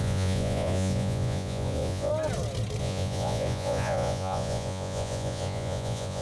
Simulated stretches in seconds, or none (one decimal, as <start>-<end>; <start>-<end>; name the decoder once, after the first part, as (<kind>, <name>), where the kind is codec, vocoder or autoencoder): 0.0-2.1 (vocoder, Vocos); 2.8-6.2

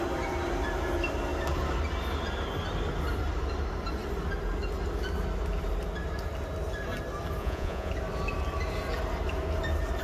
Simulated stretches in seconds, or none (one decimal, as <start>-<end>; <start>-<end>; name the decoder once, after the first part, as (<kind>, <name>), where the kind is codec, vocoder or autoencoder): 7.4-7.9 (vocoder, Vocos)

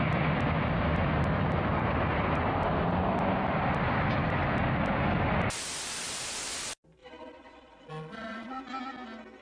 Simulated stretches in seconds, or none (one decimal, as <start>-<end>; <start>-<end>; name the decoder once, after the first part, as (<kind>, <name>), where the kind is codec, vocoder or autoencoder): 7.0-8.6 (vocoder, Vocos)

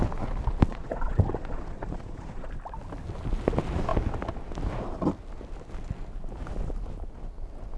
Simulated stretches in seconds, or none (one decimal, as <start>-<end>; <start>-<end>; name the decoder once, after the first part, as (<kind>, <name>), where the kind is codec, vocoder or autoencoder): 0.7-2.5 (vocoder, Vocos)